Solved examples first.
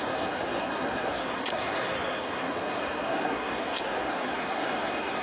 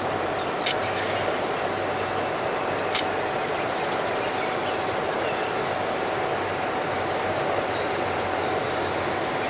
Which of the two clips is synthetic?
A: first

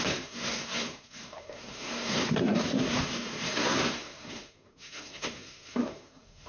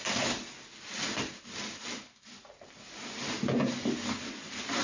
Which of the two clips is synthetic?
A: first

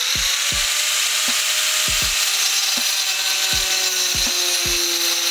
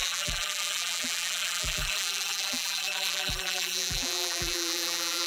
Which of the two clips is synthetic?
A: second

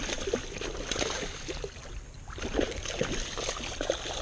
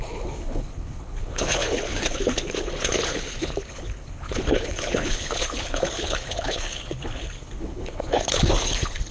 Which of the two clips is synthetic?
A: second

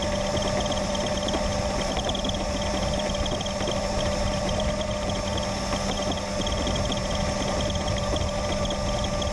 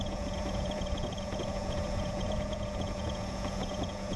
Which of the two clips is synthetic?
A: second